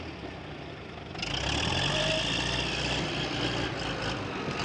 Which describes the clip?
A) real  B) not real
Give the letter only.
A